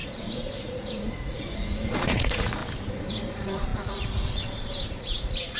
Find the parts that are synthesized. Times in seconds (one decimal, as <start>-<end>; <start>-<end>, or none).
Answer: 0.0-2.6; 3.1-5.6